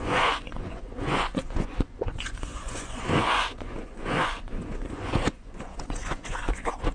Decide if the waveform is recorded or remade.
remade